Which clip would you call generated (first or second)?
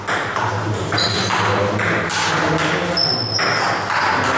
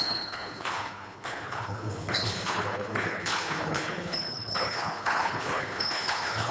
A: second